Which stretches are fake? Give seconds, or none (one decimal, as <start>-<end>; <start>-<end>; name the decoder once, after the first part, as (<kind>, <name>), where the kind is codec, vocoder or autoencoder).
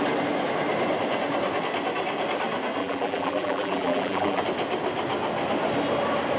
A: 2.8-4.4 (vocoder, BigVGAN v2)